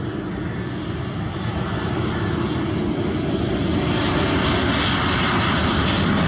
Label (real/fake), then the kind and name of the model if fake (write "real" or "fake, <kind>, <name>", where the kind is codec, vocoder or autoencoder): real